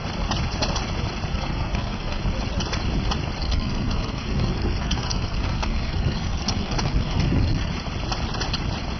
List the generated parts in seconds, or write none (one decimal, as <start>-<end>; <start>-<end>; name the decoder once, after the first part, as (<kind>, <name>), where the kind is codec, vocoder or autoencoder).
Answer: 1.3-2.2 (codec, SNAC); 3.4-7.7